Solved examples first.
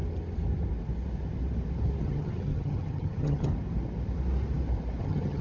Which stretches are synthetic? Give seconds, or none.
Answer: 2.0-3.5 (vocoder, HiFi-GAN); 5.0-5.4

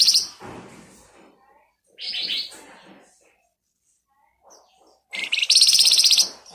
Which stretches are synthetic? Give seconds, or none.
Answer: 0.0-6.5 (vocoder, BigVGAN v2)

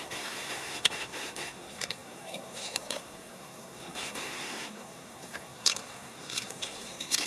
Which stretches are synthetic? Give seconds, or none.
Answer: 0.0-7.3 (codec, SNAC)

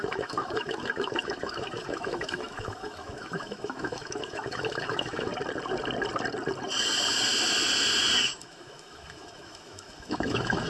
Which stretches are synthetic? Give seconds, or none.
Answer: 0.0-5.3 (autoencoder, DAC-VAE); 8.3-10.7

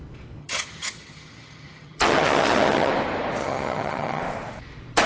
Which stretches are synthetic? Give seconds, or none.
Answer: 0.4-2.9 (vocoder, HiFi-GAN); 3.4-4.2

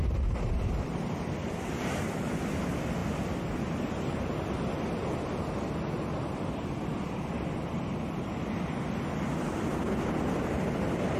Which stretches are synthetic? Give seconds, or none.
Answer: none